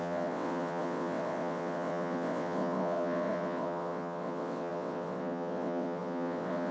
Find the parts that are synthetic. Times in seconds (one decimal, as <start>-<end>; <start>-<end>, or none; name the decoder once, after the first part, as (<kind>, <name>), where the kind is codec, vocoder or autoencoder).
0.0-6.7 (vocoder, WaveNeXt)

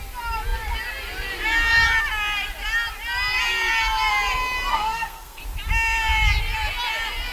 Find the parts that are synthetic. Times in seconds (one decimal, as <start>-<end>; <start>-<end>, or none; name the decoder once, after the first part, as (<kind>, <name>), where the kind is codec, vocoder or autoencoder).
4.7-5.4 (codec, SNAC)

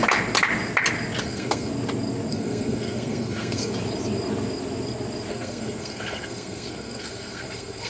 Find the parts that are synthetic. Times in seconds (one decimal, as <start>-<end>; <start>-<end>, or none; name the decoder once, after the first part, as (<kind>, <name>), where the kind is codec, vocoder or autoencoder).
1.2-1.7 (codec, SNAC); 2.3-3.7; 5.3-7.9

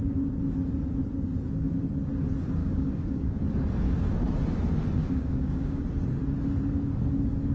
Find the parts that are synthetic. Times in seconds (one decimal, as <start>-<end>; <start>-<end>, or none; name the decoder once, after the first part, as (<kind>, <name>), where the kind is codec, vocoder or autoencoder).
2.6-3.4 (codec, DAC); 5.0-5.8

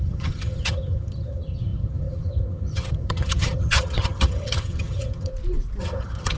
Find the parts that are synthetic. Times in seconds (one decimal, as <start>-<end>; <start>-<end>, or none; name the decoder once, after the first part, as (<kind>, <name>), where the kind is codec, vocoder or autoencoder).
0.0-5.3 (vocoder, HiFi-GAN); 5.8-6.4

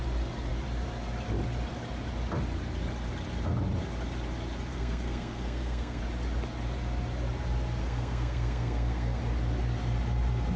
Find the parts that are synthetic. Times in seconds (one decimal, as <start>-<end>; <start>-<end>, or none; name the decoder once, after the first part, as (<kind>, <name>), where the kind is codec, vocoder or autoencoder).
4.7-6.0 (codec, SNAC); 7.8-9.2

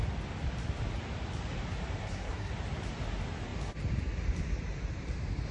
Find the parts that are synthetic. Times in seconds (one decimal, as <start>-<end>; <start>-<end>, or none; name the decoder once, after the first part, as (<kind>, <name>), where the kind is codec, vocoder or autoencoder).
2.0-2.5 (codec, SNAC)